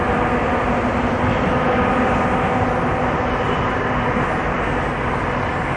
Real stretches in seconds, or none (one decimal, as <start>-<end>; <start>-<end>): 0.0-5.8